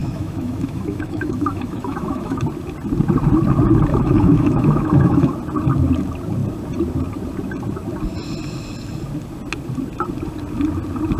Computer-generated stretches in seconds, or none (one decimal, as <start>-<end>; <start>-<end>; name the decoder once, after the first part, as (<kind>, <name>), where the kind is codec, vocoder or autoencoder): 0.0-2.4 (autoencoder, DAC-VAE); 3.9-5.3